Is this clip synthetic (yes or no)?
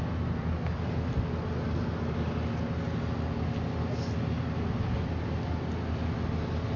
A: no